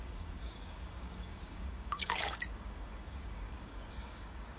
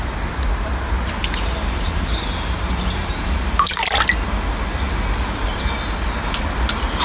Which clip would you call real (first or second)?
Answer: second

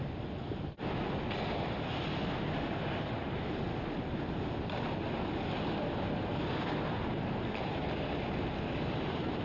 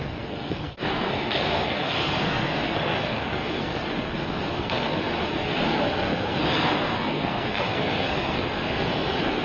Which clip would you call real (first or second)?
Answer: first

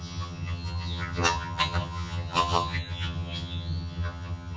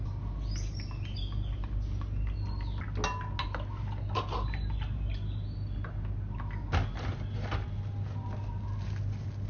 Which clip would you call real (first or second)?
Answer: second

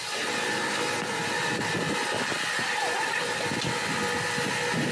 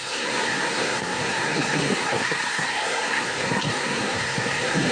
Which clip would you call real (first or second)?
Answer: first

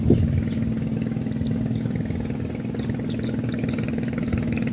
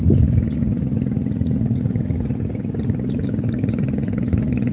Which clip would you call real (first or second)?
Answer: first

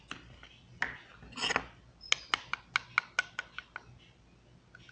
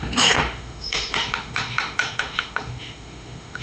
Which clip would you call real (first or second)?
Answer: first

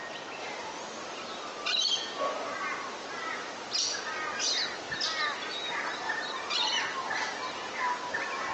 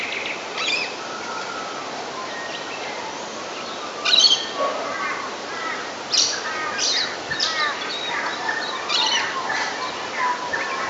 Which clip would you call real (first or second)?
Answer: first